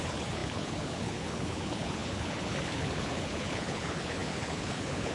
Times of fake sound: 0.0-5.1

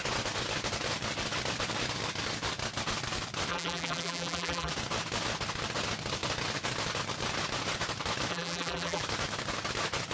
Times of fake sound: 3.5-4.7; 8.3-9.0

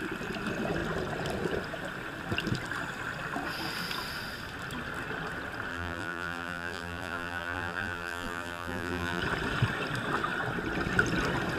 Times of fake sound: 5.7-9.2

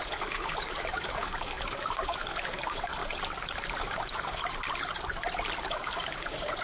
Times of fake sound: 0.0-3.0; 3.8-4.4; 5.6-6.6

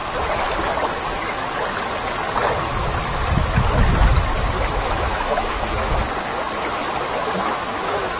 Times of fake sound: 0.9-1.4; 4.7-6.0; 7.4-8.2

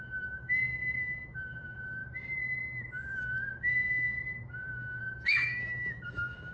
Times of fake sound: 0.0-2.0; 3.6-4.1; 5.0-6.5

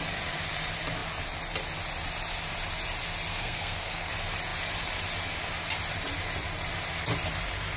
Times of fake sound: 3.3-4.1